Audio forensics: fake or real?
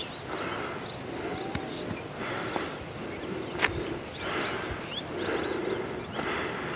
real